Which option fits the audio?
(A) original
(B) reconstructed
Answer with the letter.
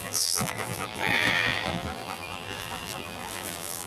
B